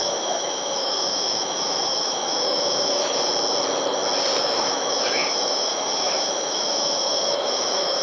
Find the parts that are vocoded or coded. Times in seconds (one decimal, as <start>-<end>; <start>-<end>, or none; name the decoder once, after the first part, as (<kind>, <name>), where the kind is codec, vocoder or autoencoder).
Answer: 0.0-3.3 (autoencoder, DAC-VAE); 4.4-8.0